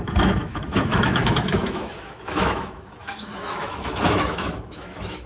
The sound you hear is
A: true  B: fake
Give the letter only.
B